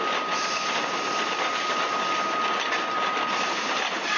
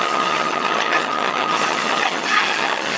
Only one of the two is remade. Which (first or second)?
second